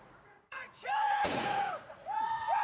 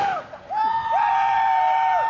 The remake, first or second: first